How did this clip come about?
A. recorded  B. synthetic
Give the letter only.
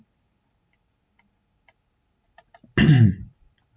A